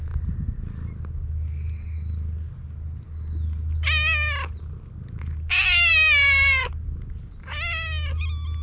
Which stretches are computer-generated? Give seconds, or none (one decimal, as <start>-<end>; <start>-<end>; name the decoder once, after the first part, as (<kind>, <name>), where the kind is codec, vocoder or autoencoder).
5.9-6.7 (autoencoder, DAC-VAE)